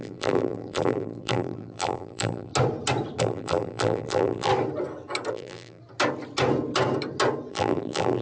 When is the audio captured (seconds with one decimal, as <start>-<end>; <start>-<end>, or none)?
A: 2.5-3.2; 4.5-5.3; 5.8-7.5